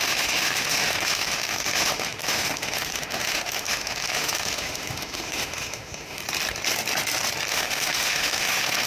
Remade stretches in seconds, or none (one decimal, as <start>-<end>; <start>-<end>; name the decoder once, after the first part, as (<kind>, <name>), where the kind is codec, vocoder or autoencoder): 0.0-6.2 (autoencoder, DAC-VAE); 7.5-8.9